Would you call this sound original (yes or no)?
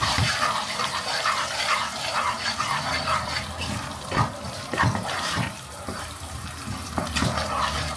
no